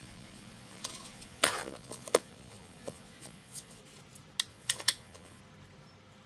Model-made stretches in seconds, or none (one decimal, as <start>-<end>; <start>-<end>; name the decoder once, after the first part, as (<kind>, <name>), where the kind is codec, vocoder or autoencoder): 0.0-3.8 (vocoder, Vocos); 4.5-5.4